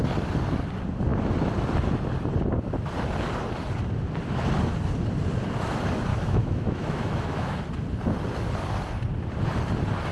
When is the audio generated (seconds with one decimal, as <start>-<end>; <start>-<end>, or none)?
6.1-7.6